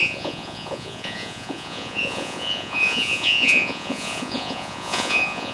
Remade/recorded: remade